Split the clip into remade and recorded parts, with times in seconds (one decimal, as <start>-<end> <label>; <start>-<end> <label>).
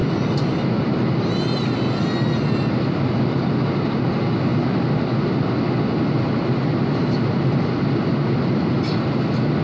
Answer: 0.0-9.6 recorded